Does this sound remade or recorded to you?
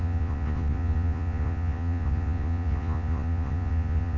remade